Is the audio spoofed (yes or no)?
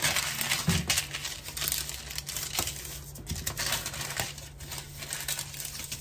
no